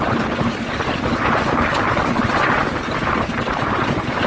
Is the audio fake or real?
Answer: fake